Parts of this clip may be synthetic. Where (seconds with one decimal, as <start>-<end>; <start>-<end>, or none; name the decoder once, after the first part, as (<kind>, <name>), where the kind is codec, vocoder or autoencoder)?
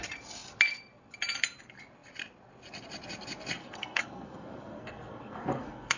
3.6-6.0 (codec, SNAC)